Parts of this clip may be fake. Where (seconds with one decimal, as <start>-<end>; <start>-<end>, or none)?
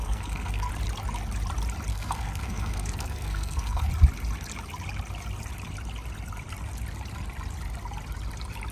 0.0-0.7; 1.9-3.9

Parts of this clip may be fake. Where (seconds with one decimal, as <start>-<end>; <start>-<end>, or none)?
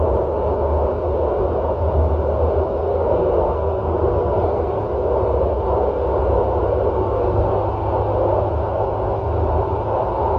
2.8-4.8; 7.0-7.5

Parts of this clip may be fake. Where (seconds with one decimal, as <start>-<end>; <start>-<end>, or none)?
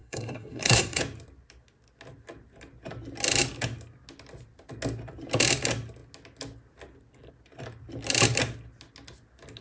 0.0-1.0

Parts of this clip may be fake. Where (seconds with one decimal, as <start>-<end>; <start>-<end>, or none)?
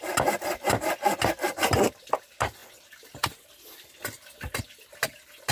none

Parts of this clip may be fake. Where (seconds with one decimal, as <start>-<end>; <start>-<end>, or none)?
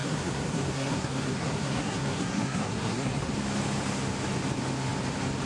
0.0-3.3